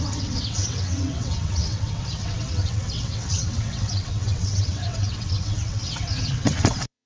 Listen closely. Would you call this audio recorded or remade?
remade